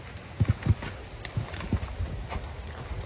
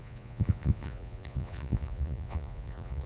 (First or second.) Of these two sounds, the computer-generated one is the second